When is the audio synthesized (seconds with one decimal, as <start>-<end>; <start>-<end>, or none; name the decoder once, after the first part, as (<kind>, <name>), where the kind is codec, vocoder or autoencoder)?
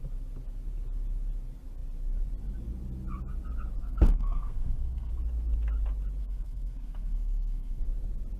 3.8-5.1 (codec, SNAC); 6.2-7.8